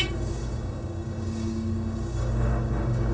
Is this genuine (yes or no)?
no